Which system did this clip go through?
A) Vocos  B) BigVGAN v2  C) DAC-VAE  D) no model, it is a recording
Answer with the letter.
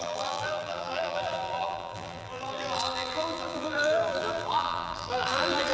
B